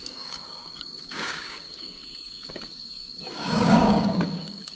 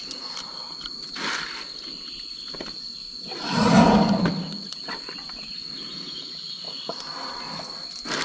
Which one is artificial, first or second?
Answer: first